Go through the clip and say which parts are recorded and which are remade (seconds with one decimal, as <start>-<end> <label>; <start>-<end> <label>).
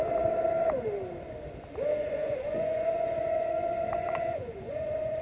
0.0-2.0 recorded; 2.0-5.2 remade